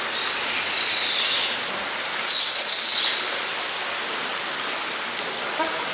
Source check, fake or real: real